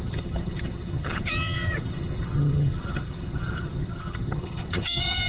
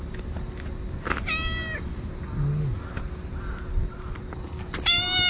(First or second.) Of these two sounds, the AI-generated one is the first